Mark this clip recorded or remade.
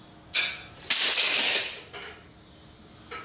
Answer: recorded